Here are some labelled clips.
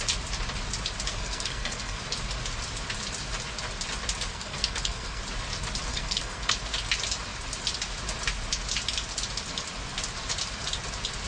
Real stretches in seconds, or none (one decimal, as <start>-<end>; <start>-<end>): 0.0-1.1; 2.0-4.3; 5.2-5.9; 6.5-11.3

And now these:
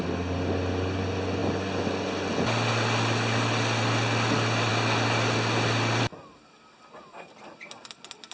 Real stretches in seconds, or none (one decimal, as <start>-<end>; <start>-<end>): 0.0-8.3

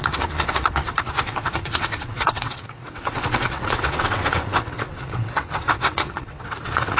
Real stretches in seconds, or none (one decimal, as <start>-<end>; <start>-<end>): none

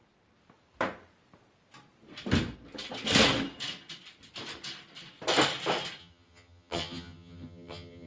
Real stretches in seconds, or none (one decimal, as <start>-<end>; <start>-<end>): 0.0-6.0

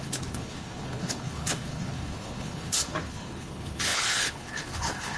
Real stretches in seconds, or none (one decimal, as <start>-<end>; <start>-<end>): none